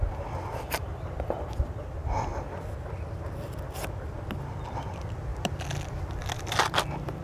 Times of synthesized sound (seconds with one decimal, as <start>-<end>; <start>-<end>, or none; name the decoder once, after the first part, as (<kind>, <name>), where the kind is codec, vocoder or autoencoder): none